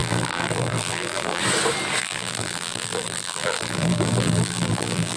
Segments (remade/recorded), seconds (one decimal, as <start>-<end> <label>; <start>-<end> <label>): 0.0-1.4 remade; 1.4-2.0 recorded; 2.0-5.2 remade